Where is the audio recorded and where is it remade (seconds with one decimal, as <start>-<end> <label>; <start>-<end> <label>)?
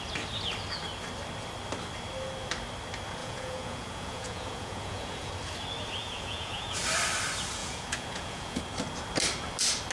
0.0-3.2 recorded; 3.2-5.3 remade; 5.3-6.0 recorded; 6.0-6.8 remade; 6.8-7.6 recorded; 7.6-8.6 remade; 8.6-9.9 recorded